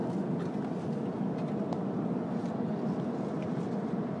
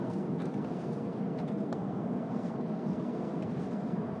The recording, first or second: first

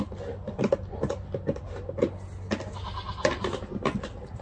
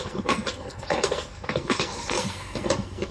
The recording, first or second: first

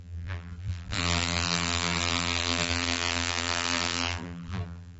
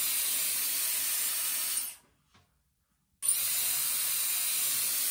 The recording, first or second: second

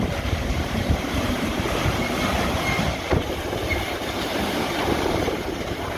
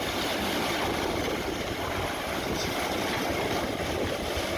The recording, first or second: second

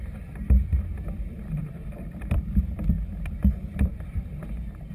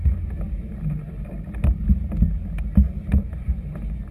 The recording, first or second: second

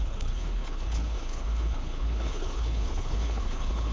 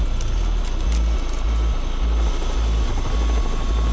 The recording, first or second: second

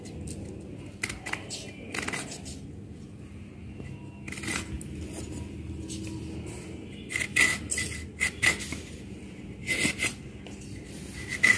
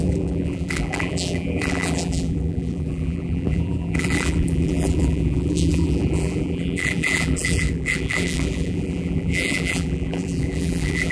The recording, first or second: first